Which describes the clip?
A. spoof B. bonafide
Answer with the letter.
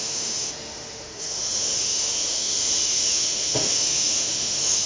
A